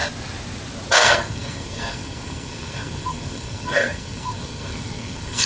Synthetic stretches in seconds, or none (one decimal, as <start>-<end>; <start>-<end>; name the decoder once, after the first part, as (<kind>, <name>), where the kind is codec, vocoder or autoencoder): 0.9-5.5 (codec, SNAC)